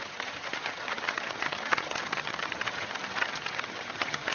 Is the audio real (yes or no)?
no